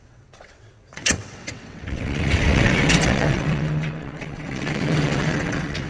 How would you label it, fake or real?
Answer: fake